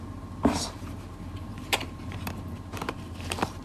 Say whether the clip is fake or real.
fake